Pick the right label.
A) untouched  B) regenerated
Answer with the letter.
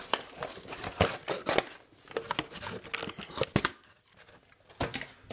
A